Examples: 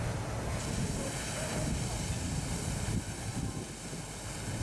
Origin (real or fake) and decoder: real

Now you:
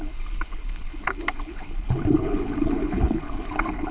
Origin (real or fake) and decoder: fake, codec, HILCodec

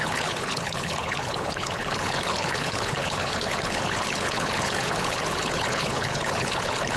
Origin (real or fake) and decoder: fake, codec, HILCodec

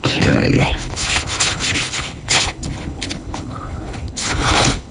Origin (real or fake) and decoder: fake, codec, HILCodec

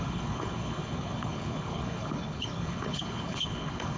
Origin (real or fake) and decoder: fake, codec, HILCodec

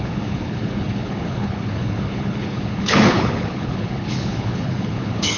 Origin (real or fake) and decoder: fake, codec, HILCodec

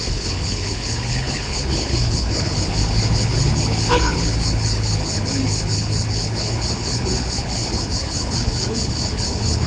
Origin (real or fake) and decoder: fake, codec, HILCodec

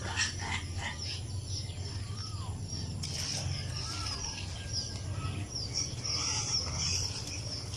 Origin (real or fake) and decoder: real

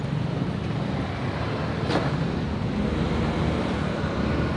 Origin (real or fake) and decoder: real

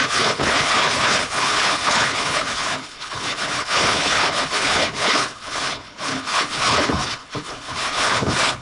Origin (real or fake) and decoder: fake, codec, HILCodec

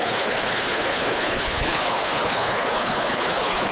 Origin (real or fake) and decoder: fake, codec, HILCodec